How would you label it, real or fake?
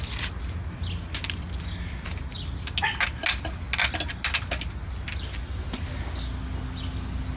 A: real